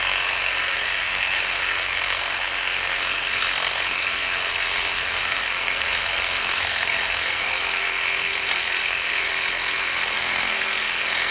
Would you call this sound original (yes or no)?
no